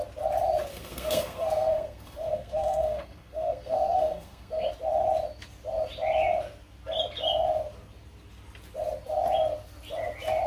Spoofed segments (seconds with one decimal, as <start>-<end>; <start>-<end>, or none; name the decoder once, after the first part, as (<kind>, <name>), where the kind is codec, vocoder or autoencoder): 0.7-4.7 (codec, SNAC)